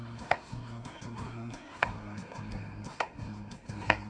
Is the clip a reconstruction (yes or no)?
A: yes